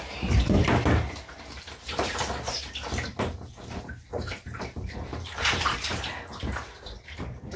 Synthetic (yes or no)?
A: yes